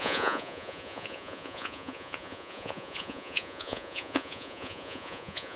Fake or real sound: fake